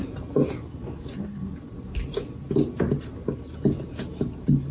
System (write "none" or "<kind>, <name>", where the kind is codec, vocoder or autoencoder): none